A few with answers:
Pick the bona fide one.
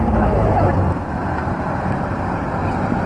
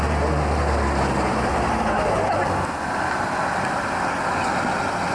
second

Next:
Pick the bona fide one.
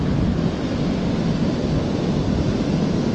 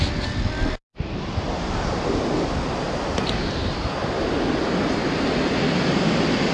second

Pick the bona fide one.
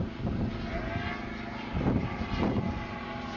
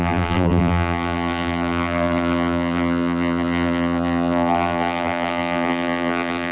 first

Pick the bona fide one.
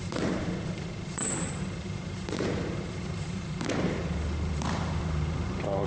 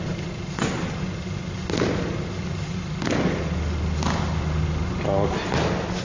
second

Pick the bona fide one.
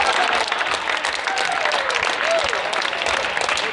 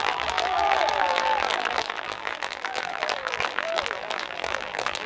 first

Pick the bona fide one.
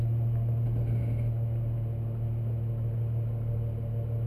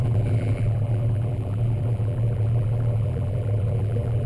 first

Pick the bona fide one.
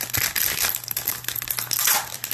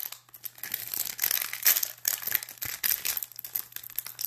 second